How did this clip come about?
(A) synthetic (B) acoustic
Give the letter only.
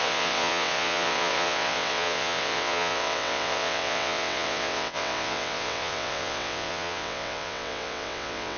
A